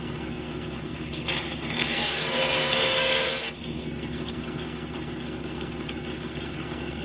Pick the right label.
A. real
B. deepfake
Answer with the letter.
B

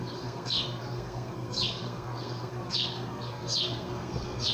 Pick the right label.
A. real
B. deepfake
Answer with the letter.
B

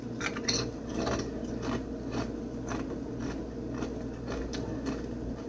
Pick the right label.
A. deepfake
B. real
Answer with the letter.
B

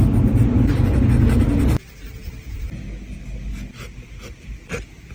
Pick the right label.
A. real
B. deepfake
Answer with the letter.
A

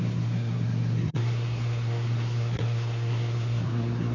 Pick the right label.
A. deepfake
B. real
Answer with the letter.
A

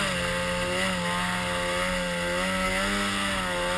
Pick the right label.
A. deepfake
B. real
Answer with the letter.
B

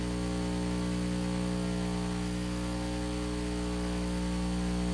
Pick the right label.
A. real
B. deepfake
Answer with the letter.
A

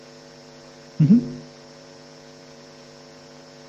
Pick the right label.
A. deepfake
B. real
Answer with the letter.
A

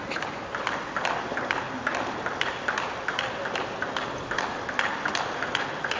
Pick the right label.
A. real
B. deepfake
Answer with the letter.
A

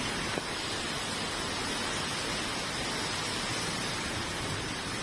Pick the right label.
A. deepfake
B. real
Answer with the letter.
B